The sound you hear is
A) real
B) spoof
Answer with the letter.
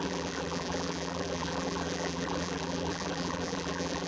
B